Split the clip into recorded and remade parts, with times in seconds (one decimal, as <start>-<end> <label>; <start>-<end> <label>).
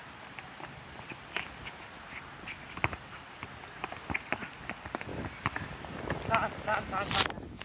0.0-3.3 remade; 3.3-5.1 recorded; 5.1-5.9 remade; 5.9-7.6 recorded